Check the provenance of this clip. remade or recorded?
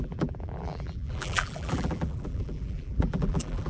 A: remade